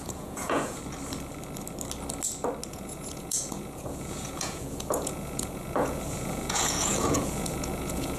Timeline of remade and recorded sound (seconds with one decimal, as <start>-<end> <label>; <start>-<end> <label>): 0.0-0.8 remade; 0.8-2.7 recorded; 2.7-8.2 remade